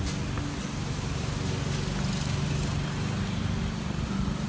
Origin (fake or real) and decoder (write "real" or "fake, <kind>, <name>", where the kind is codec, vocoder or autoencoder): real